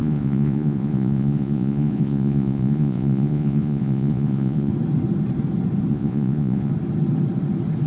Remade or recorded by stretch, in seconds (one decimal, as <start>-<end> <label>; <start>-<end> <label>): 0.0-4.7 remade; 4.7-5.9 recorded; 5.9-6.7 remade; 6.7-7.9 recorded

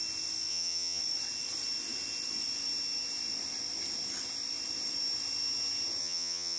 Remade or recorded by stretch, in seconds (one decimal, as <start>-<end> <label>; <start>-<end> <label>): 0.0-0.5 recorded; 0.5-1.0 remade; 1.0-6.0 recorded; 6.0-6.6 remade

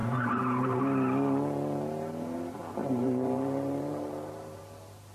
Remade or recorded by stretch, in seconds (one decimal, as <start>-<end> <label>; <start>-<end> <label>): 0.0-0.8 remade; 0.8-2.8 recorded; 2.8-4.6 remade; 4.6-5.1 recorded

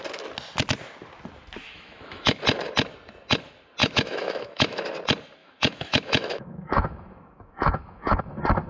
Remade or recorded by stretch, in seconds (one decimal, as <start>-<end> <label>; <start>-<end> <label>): 0.0-1.6 recorded; 1.6-2.4 remade; 2.4-3.8 recorded; 3.8-4.8 remade; 4.8-5.4 recorded; 5.4-8.2 remade; 8.2-8.7 recorded

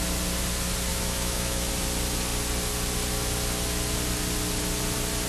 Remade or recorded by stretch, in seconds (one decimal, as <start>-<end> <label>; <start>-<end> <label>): 0.0-0.9 recorded; 0.9-1.7 remade; 1.7-5.3 recorded

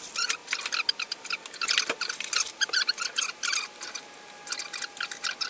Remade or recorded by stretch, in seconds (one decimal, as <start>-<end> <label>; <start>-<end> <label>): 0.0-5.5 recorded